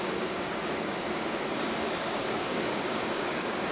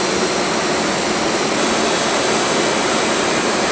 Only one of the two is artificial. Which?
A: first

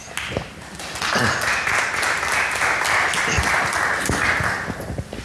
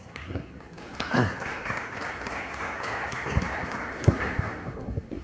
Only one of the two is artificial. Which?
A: second